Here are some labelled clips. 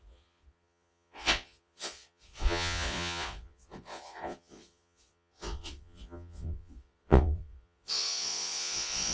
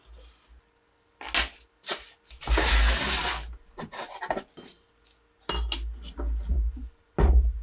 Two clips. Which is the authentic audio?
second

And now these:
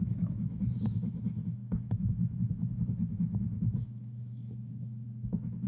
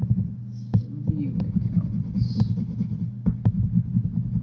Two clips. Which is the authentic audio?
second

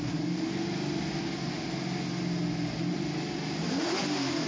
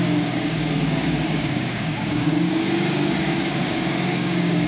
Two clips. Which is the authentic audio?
first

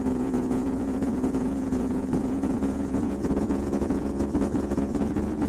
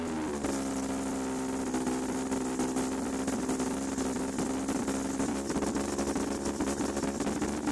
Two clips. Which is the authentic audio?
second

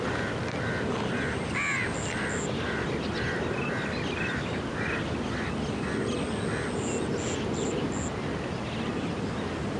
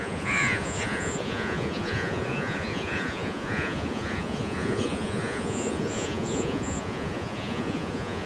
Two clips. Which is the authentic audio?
first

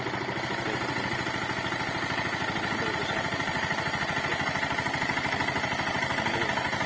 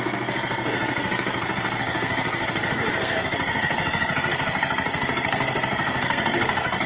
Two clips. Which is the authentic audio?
first